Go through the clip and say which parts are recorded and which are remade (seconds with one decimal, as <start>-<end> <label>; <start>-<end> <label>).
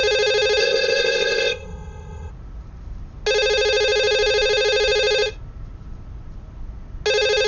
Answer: 0.0-0.6 recorded; 0.6-2.3 remade; 2.3-7.5 recorded